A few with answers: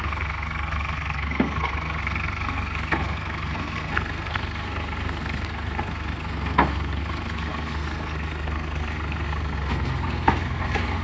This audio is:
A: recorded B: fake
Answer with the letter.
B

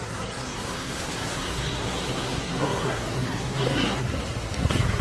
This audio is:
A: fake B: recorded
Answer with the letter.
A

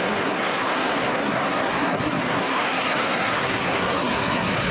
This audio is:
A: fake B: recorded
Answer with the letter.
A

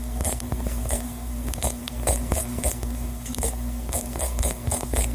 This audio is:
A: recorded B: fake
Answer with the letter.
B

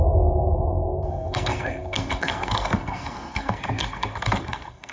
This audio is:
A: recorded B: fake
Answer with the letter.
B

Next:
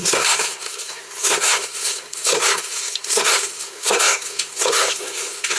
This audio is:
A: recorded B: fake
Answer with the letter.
B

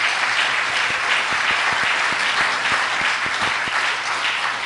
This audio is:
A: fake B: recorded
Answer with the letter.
B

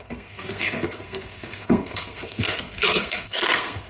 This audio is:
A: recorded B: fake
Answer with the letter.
B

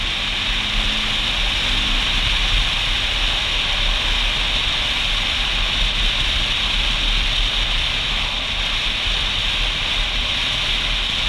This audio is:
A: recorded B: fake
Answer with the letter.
A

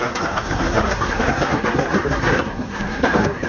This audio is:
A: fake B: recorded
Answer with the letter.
A